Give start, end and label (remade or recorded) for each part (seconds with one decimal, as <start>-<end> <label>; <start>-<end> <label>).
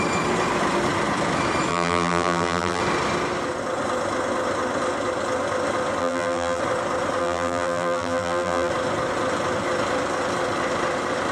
0.0-1.7 recorded; 1.7-2.8 remade; 2.8-6.0 recorded; 6.0-6.6 remade; 6.6-7.2 recorded; 7.2-8.7 remade; 8.7-11.3 recorded